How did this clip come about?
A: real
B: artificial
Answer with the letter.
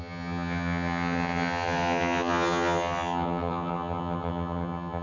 B